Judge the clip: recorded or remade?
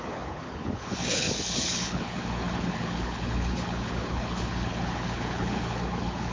remade